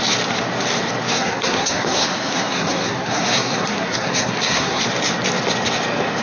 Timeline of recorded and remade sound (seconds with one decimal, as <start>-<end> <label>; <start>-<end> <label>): 0.0-1.1 recorded; 1.1-4.8 remade; 4.8-6.2 recorded